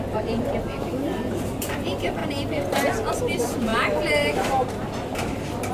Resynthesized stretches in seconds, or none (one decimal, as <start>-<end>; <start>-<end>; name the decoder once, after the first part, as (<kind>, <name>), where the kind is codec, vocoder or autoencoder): 1.1-1.7 (vocoder, BigVGAN v2); 3.7-4.7